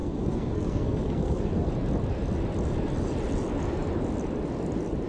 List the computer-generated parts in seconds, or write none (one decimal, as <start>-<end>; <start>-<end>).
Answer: 0.0-1.7